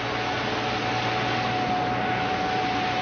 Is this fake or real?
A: real